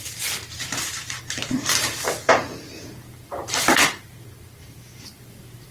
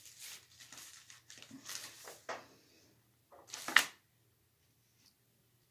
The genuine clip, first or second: second